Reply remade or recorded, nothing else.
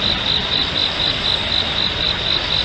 recorded